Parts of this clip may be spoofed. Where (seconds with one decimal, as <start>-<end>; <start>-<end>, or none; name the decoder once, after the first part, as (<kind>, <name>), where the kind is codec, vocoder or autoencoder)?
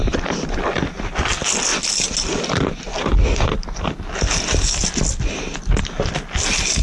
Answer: none